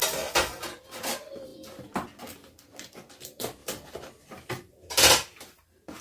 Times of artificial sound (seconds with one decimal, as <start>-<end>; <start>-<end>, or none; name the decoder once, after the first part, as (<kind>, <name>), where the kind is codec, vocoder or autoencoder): 1.0-1.5 (vocoder, BigVGAN v2); 2.2-6.0